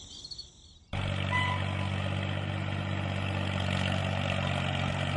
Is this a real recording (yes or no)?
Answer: yes